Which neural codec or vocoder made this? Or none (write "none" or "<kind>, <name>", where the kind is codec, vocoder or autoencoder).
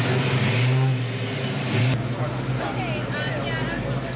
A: none